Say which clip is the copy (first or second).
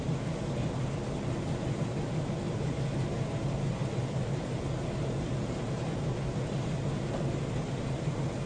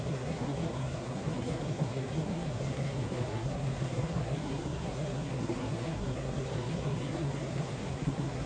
second